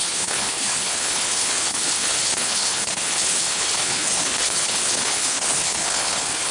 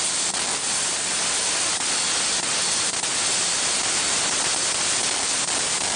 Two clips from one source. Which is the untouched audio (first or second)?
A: second